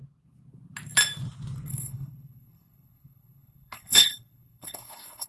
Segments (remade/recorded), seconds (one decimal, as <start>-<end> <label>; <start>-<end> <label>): 0.0-1.7 recorded; 1.7-5.3 remade